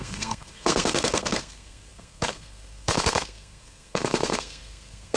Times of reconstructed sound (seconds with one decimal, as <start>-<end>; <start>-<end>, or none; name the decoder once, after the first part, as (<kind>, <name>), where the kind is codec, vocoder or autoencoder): 0.0-5.2 (codec, SNAC)